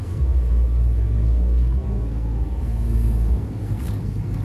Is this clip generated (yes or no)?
yes